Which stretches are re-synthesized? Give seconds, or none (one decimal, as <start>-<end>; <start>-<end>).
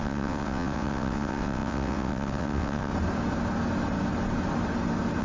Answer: 0.0-2.9